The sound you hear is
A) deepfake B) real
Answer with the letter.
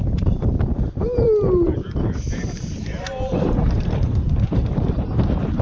A